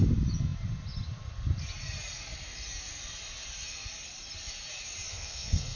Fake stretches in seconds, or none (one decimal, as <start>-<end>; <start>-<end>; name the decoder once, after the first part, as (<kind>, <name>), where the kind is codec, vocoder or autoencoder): 5.1-5.8 (codec, SNAC)